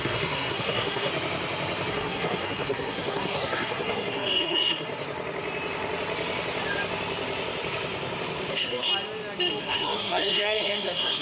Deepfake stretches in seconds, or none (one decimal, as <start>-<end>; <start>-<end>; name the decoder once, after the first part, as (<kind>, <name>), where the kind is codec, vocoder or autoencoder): 0.0-1.1 (codec, SNAC); 1.9-4.9; 8.5-8.9; 9.6-11.2